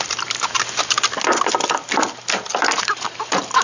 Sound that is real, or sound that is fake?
real